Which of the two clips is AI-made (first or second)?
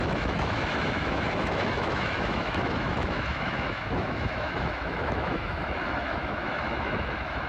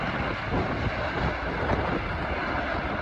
first